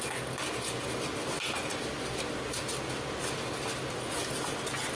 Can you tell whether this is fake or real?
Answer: real